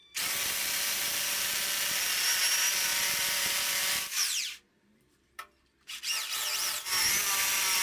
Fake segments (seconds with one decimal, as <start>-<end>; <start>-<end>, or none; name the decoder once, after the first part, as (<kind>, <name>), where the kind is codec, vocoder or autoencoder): 0.0-1.5 (vocoder, BigVGAN v2); 2.9-6.0